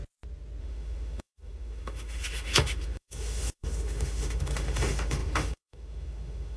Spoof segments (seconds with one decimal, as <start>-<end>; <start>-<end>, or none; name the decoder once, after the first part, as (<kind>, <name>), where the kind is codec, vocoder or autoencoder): 0.6-6.6 (autoencoder, DAC-VAE)